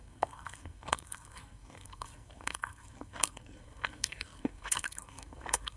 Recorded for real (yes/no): no